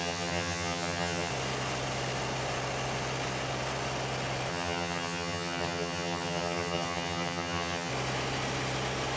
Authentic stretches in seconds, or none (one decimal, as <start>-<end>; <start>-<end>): 1.3-4.5; 7.9-9.2